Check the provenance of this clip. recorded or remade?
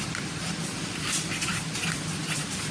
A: remade